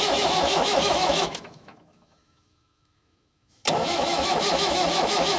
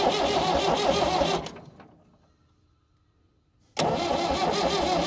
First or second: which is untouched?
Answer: second